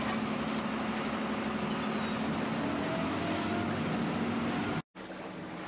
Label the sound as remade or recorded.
recorded